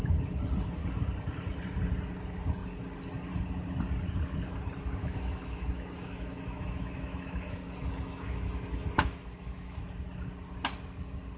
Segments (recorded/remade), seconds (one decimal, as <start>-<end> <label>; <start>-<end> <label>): 0.0-5.0 recorded; 5.0-9.8 remade; 9.8-11.4 recorded